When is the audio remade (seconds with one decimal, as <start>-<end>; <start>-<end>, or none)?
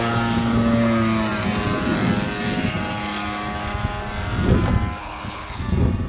5.0-5.6